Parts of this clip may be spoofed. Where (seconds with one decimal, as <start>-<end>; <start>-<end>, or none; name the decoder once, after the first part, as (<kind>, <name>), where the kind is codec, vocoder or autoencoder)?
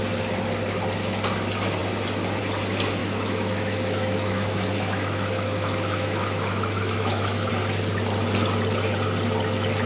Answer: 3.0-7.5 (autoencoder, DAC-VAE)